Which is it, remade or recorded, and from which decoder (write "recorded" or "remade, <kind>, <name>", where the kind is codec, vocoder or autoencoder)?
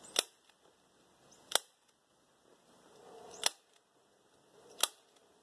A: recorded